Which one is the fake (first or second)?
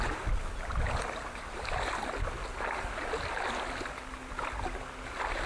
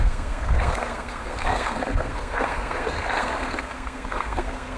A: second